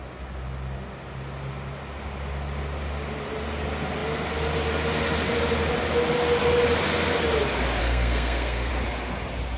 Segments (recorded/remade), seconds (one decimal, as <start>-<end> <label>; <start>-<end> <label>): 0.0-7.8 recorded; 7.8-8.7 remade; 8.7-9.6 recorded